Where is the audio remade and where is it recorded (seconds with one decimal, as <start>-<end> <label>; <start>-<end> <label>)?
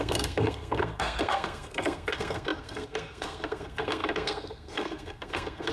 0.0-5.7 remade